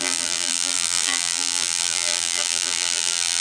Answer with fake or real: fake